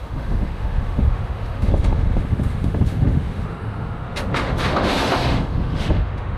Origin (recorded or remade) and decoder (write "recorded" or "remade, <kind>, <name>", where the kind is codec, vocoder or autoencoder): remade, autoencoder, DAC-VAE